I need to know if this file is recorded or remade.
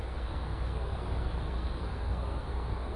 remade